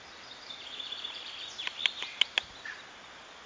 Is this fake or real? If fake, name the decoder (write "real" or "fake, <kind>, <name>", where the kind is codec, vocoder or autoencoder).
real